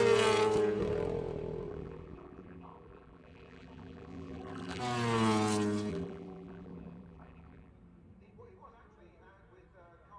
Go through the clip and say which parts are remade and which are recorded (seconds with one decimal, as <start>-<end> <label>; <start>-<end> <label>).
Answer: 0.0-1.7 recorded; 1.7-4.8 remade; 4.8-5.9 recorded; 5.9-7.7 remade; 7.7-10.2 recorded